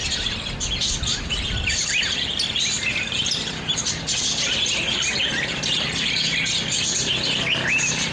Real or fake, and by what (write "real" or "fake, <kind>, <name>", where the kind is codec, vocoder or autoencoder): real